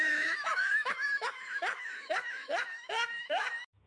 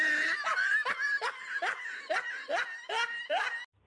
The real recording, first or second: second